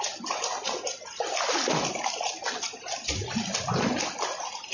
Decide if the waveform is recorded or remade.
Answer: recorded